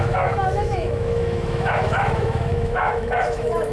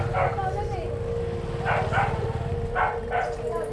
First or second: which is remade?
first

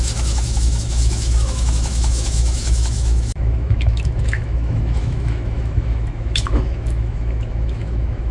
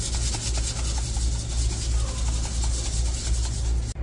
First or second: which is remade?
first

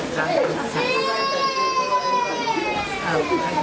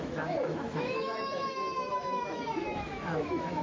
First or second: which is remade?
second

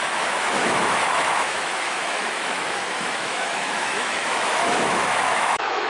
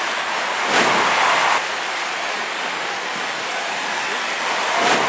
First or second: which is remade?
first